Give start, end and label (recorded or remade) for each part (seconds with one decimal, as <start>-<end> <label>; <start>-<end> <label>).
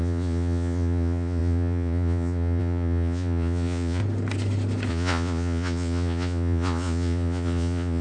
0.0-4.0 remade; 4.0-4.9 recorded; 4.9-8.0 remade